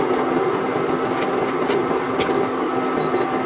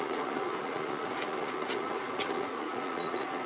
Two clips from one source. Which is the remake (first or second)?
second